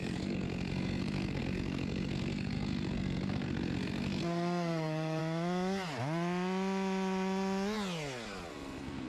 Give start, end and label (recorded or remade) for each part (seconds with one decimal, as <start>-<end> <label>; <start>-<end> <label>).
0.0-5.2 remade; 5.2-8.5 recorded; 8.5-9.1 remade